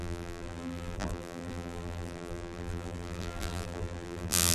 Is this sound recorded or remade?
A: remade